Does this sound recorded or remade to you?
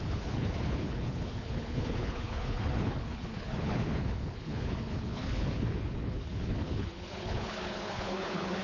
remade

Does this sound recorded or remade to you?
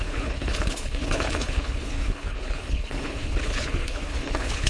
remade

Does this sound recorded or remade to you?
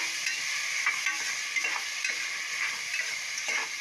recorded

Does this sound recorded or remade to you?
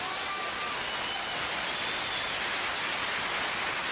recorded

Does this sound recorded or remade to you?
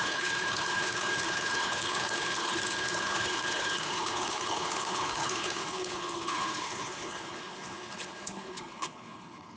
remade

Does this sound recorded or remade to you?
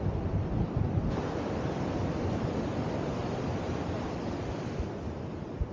recorded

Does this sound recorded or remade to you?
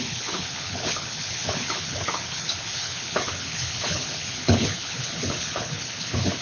remade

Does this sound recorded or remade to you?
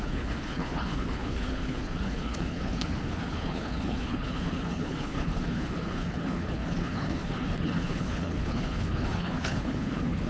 remade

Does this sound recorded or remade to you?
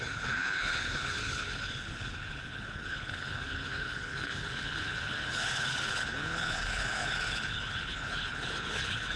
remade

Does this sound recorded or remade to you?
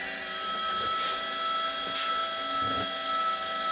recorded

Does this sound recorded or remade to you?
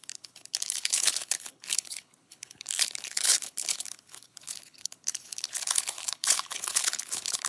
remade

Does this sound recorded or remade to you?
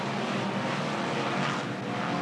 recorded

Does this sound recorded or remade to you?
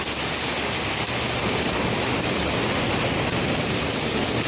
recorded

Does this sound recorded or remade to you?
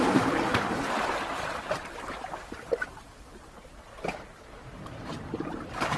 recorded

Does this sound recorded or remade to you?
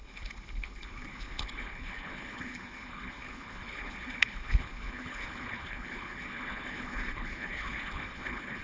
remade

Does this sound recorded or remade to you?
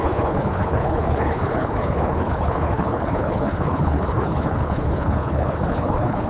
remade